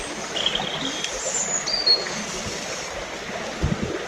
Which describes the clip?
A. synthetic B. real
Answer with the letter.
B